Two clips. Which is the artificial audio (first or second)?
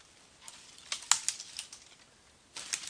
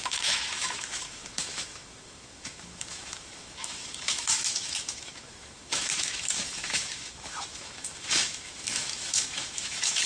second